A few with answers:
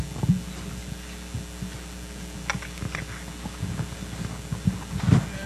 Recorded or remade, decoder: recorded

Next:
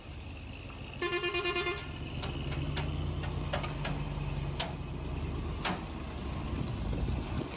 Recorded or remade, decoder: recorded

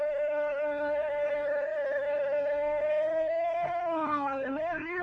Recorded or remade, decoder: remade, codec, SNAC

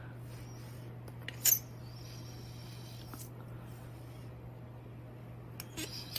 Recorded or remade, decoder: recorded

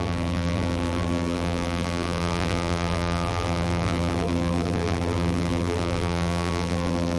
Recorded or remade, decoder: remade, vocoder, BigVGAN v2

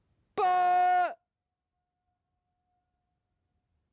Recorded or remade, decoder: recorded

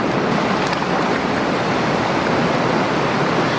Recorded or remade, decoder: recorded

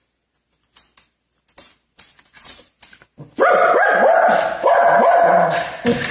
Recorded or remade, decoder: recorded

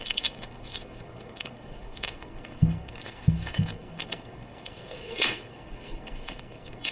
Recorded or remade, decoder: remade, codec, SNAC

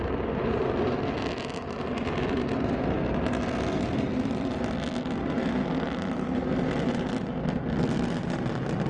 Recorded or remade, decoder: recorded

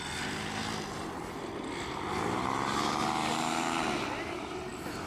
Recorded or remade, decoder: recorded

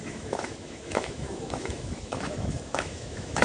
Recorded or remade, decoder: remade, autoencoder, DAC-VAE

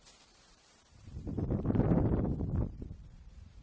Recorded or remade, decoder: remade, vocoder, BigVGAN v2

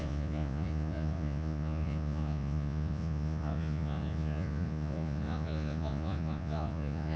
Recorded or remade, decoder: remade, vocoder, Vocos